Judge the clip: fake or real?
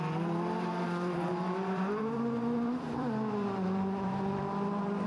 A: fake